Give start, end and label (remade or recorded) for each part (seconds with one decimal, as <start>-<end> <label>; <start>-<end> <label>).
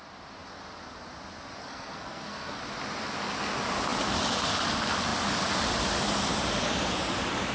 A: 0.0-1.6 recorded; 1.6-2.6 remade; 2.6-7.5 recorded